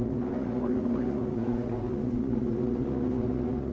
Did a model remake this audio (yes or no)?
yes